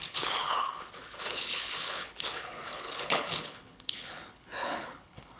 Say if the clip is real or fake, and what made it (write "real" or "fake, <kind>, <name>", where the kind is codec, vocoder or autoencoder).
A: fake, codec, HILCodec